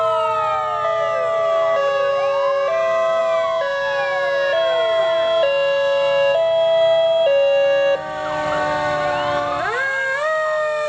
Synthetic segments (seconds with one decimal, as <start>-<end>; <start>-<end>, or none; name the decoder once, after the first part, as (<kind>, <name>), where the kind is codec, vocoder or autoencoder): none